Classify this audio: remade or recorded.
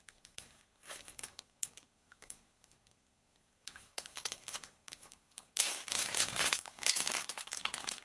remade